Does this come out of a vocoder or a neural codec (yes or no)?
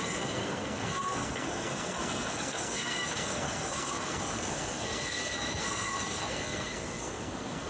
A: yes